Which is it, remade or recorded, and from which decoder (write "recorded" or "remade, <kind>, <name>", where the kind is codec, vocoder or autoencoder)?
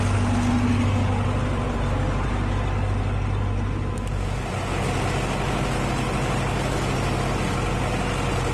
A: recorded